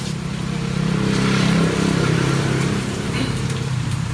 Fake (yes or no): yes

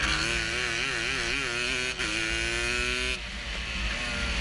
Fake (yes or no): no